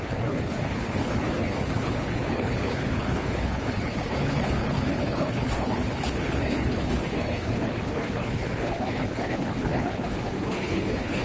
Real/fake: fake